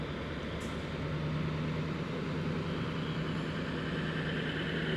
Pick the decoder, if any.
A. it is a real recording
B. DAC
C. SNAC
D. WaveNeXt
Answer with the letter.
A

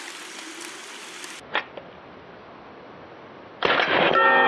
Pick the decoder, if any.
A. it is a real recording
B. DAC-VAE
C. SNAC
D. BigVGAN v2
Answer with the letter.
A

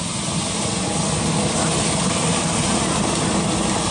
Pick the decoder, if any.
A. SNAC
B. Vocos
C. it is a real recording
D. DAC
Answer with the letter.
C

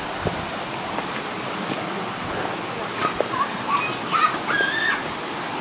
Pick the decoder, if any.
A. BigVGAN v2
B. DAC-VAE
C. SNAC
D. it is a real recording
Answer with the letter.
D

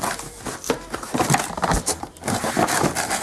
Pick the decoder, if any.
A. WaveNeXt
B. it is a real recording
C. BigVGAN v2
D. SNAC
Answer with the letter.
C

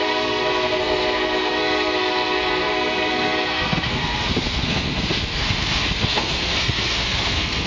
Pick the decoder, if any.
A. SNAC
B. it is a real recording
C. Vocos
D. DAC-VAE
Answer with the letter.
A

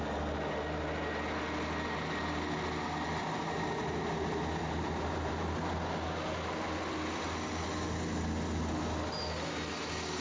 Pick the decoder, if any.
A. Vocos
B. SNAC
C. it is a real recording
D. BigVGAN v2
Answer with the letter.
C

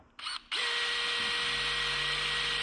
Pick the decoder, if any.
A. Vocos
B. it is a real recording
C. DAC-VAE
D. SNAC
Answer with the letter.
B